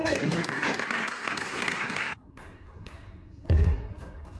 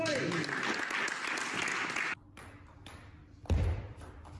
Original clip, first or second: second